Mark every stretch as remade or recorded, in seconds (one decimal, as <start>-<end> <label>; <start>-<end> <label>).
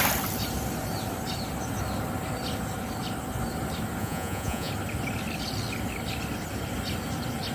0.0-4.0 recorded; 4.0-4.7 remade; 4.7-7.5 recorded